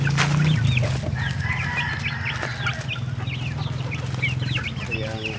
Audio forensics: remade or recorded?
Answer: recorded